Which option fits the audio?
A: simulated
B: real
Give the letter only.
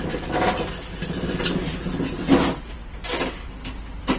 B